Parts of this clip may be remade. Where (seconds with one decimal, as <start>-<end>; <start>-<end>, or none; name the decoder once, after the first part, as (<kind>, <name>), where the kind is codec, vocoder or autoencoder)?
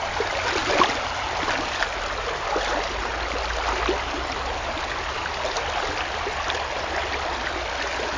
none